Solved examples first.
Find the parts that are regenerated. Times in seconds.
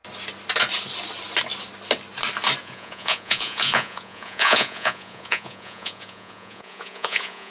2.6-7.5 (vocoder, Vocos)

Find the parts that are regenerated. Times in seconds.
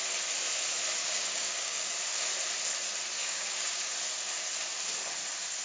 1.0-1.9 (codec, DAC); 3.2-3.9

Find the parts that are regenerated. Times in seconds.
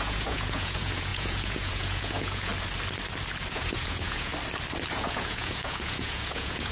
0.0-2.5 (vocoder, Vocos); 3.5-4.3; 4.9-6.7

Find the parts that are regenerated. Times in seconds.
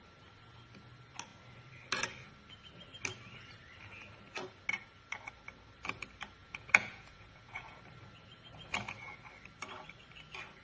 6.4-7.8 (vocoder, Vocos)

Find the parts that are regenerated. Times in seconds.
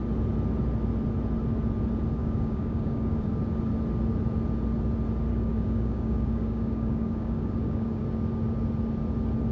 2.2-3.4 (codec, DAC); 5.3-8.0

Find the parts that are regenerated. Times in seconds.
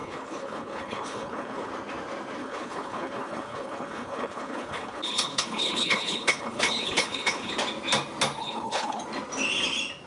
0.0-1.7 (codec, HILCodec); 2.4-7.5; 8.4-9.0